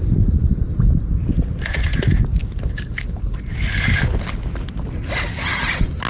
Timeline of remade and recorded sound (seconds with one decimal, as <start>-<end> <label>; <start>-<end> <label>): 0.0-6.1 recorded